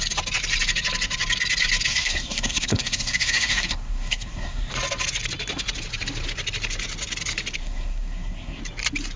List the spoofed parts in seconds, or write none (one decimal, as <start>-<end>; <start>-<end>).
1.9-4.7; 7.6-8.6

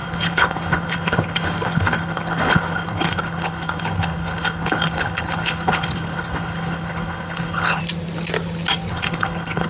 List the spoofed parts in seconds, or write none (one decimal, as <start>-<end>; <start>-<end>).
0.0-7.8; 8.9-9.7

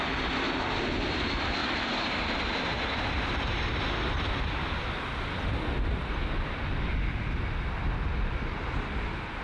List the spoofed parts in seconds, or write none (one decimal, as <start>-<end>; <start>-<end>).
1.6-3.3

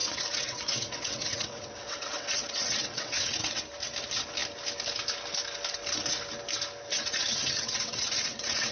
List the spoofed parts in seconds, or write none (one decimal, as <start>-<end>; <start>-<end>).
0.0-3.6; 6.9-8.7

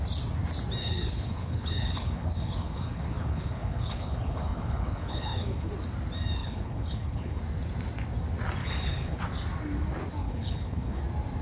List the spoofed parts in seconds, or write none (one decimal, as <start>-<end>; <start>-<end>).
0.8-5.7; 6.4-7.4; 8.6-9.2; 10.2-11.0